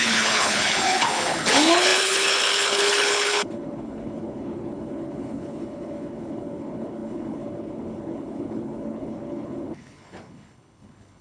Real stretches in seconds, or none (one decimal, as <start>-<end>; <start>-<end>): none